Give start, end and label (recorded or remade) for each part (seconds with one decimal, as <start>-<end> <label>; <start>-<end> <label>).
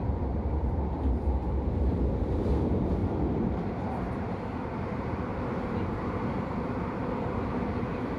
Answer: 0.0-1.4 remade; 1.4-2.2 recorded; 2.2-5.3 remade; 5.3-6.2 recorded; 6.2-8.2 remade